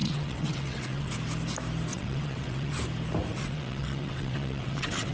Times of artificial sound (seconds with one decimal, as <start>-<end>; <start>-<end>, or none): 0.0-1.1; 1.9-2.8; 3.3-5.1